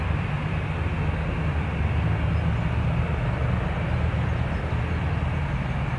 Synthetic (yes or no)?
no